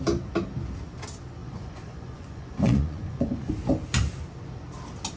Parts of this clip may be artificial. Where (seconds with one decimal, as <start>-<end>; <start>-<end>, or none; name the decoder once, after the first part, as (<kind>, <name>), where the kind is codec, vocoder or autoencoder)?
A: 1.4-3.5 (vocoder, Vocos)

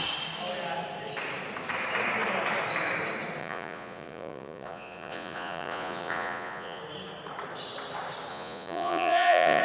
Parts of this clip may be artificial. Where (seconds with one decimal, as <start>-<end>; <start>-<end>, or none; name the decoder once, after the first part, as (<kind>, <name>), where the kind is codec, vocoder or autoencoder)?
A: 3.4-6.8 (vocoder, Vocos); 8.3-9.6

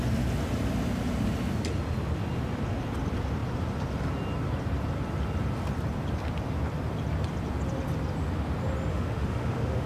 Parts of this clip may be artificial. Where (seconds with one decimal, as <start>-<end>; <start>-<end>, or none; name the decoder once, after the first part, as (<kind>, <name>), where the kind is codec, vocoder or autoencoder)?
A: 8.9-9.9 (autoencoder, DAC-VAE)

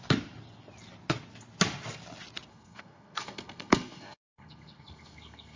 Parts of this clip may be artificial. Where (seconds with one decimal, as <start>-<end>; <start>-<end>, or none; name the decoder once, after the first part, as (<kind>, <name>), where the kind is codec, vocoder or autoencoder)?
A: 2.5-5.6 (codec, SNAC)

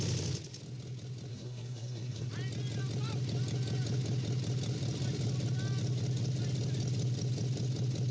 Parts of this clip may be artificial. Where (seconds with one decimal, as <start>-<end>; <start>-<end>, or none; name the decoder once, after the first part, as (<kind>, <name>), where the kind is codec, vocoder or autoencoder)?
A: 1.3-2.3 (codec, SNAC)

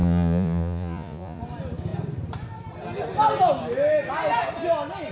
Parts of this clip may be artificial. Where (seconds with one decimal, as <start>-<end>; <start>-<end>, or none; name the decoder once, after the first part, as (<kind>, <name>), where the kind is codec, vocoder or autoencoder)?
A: 0.0-1.4 (vocoder, Vocos)